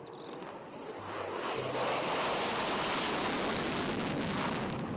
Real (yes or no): yes